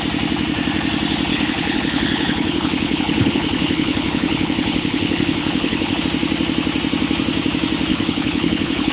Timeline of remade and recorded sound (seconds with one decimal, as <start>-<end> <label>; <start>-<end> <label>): 0.0-1.3 recorded; 1.3-6.0 remade; 6.0-7.9 recorded; 7.9-8.9 remade

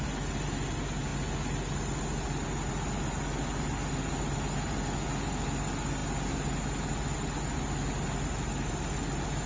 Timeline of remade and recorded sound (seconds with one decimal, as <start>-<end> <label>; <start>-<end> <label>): 0.0-9.5 recorded

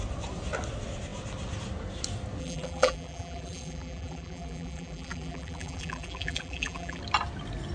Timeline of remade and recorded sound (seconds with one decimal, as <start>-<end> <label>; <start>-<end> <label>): 0.0-2.4 recorded; 2.4-7.0 remade; 7.0-7.7 recorded

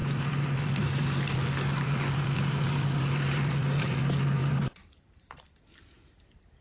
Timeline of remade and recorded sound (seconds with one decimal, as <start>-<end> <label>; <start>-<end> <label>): 0.0-4.0 remade; 4.0-4.4 recorded; 4.4-5.8 remade; 5.8-6.6 recorded

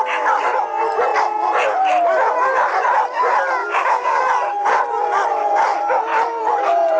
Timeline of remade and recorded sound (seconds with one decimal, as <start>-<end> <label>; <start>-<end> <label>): 0.0-3.6 recorded; 3.6-4.2 remade; 4.2-7.0 recorded